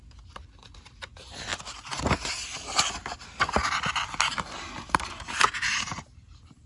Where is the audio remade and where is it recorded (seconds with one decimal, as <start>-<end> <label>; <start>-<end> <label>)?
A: 0.0-1.5 remade; 1.5-4.3 recorded; 4.3-6.7 remade